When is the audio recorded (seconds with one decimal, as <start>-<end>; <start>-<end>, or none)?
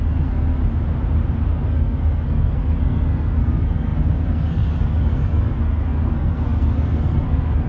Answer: 0.6-1.5